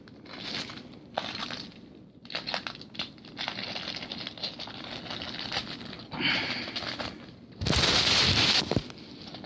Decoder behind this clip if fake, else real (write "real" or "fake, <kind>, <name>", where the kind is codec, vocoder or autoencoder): real